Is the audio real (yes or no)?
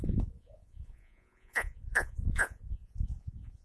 no